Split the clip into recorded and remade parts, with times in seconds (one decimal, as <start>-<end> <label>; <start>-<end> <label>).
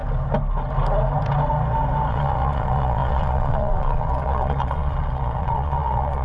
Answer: 0.0-2.1 recorded; 2.1-6.2 remade